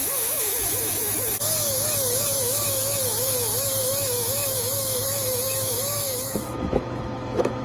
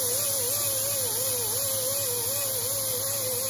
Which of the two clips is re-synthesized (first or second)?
first